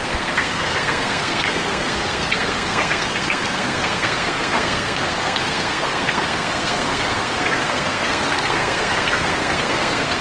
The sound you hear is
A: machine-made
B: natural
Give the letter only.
A